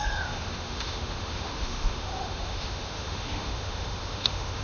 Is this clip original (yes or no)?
no